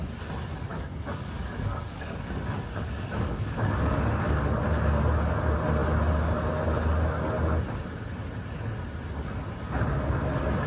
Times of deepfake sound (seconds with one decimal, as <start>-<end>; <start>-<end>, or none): 0.7-4.6